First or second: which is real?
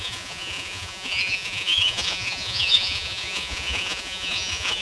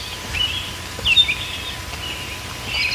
second